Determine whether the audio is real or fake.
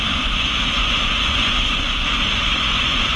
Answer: fake